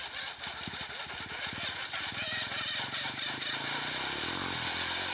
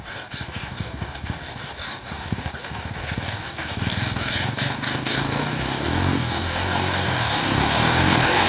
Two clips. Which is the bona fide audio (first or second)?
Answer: first